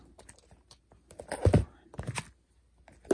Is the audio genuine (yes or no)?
yes